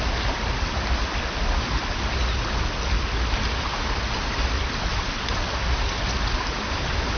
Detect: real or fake real